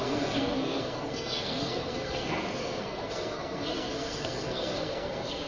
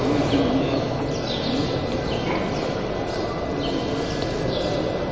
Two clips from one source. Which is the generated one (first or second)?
first